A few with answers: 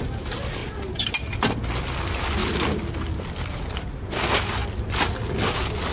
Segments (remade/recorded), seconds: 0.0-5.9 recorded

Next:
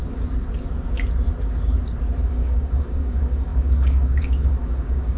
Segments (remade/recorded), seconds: 0.0-2.3 recorded; 2.3-5.2 remade

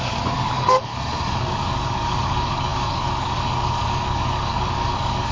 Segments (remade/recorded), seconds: 0.0-0.9 remade; 0.9-1.4 recorded; 1.4-5.3 remade

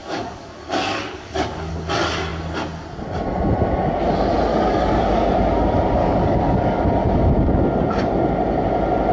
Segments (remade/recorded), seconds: 0.0-1.7 remade; 1.7-4.5 recorded; 4.5-5.3 remade; 5.3-6.0 recorded; 6.0-6.8 remade; 6.8-9.1 recorded